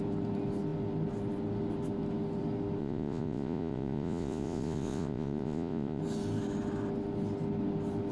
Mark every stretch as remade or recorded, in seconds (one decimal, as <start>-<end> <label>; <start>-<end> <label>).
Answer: 0.0-2.8 recorded; 2.8-6.0 remade; 6.0-8.1 recorded